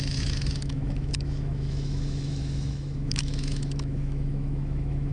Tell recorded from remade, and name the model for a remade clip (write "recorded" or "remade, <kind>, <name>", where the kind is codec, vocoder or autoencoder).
remade, autoencoder, DAC-VAE